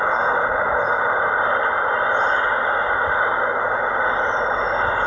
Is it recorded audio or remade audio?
recorded